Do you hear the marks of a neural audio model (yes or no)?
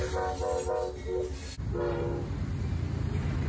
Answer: no